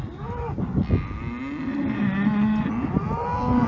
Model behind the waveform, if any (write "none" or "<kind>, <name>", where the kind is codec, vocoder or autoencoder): none